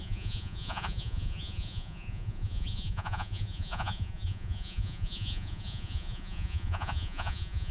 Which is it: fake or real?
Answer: fake